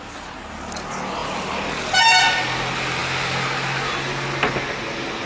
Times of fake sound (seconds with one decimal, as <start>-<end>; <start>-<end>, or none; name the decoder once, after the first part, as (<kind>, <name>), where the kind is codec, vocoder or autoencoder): none